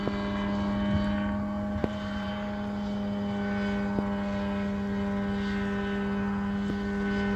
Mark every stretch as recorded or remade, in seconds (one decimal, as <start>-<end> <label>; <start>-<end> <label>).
0.0-1.8 recorded; 1.8-2.3 remade; 2.3-7.4 recorded